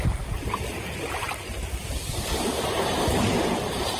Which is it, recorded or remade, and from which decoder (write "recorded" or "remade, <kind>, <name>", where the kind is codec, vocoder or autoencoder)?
remade, vocoder, BigVGAN v2